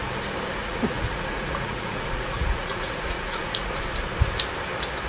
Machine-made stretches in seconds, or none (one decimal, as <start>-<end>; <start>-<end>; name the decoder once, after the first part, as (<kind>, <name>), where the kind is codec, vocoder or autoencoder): 0.6-3.7 (vocoder, Vocos)